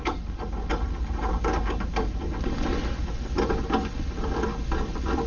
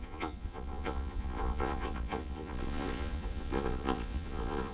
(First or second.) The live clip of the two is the first